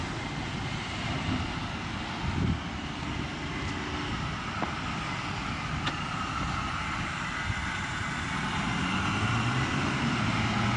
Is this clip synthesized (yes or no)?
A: no